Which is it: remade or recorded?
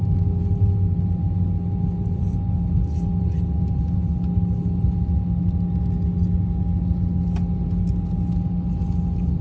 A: recorded